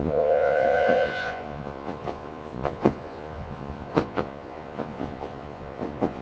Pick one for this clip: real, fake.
fake